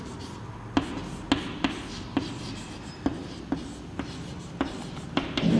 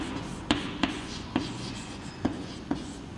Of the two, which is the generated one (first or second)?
second